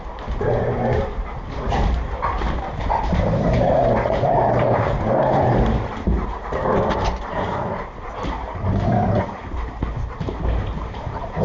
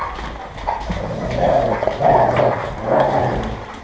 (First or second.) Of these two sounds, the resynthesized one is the first